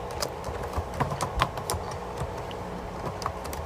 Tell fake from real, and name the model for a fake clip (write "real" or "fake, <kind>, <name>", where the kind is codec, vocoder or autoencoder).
real